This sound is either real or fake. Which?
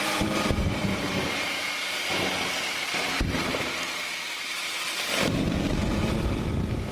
fake